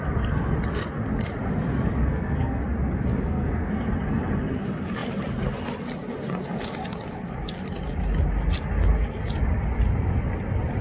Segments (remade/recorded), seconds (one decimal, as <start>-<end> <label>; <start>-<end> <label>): 0.0-2.0 recorded; 2.0-2.6 remade; 2.6-3.1 recorded; 3.1-3.7 remade; 3.7-10.8 recorded